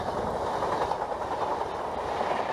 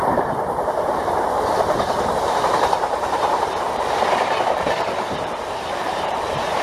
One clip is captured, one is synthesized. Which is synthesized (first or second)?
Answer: second